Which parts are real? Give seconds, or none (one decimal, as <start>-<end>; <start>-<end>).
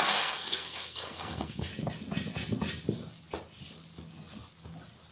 1.7-5.1